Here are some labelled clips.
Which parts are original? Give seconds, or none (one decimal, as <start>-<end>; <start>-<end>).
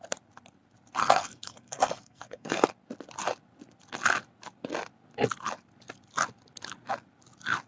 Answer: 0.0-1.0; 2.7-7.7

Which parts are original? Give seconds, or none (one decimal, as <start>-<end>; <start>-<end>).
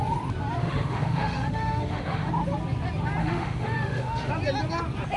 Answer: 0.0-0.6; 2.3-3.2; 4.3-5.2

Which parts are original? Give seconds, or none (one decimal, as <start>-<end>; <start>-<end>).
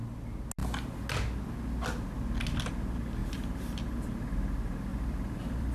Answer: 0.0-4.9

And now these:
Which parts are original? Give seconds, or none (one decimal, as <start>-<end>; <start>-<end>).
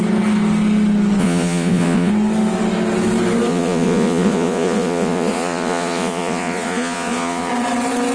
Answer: 0.0-1.2; 2.1-3.5; 7.5-8.1